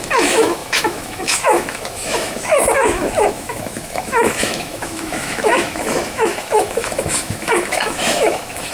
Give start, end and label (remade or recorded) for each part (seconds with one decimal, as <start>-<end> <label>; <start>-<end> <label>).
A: 0.0-8.7 remade